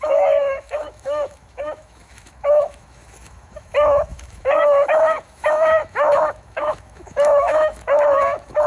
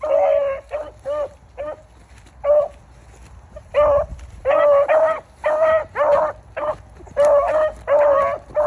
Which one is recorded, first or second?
second